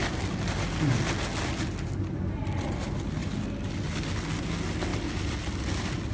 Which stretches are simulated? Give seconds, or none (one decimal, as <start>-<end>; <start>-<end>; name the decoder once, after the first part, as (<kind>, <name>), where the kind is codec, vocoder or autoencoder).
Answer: 0.0-0.9 (vocoder, BigVGAN v2); 4.9-5.6